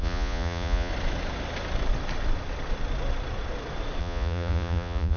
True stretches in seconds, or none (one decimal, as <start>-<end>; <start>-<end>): 0.9-4.0